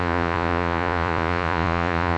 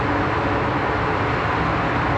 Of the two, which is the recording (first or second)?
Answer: second